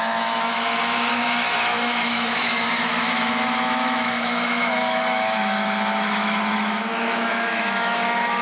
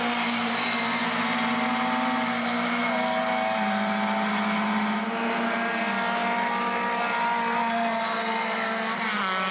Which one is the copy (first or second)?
first